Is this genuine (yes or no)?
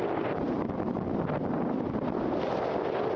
yes